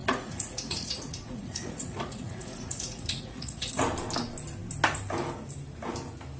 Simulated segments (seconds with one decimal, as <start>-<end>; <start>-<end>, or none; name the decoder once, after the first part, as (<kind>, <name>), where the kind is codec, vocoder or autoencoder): 0.0-3.8 (vocoder, Vocos)